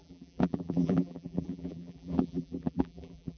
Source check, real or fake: fake